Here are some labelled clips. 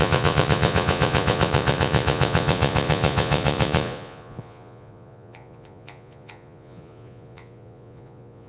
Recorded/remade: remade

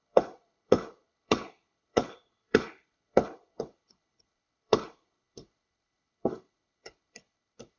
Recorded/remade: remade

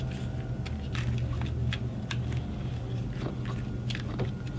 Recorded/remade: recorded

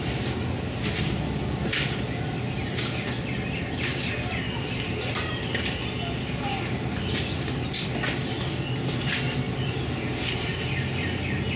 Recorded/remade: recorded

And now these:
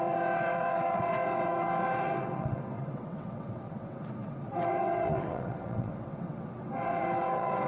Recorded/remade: remade